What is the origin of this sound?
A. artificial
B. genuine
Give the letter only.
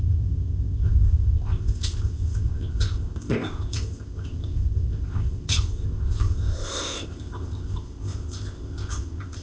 A